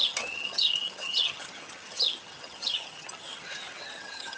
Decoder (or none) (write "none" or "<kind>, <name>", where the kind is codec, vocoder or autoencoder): vocoder, HiFi-GAN